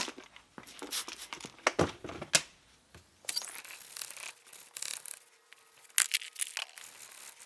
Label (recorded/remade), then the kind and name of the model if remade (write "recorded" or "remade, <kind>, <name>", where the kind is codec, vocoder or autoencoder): recorded